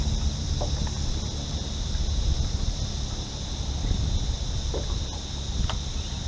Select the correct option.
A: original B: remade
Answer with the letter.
A